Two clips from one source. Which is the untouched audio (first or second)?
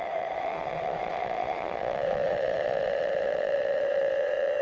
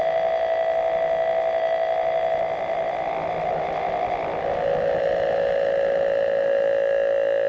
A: second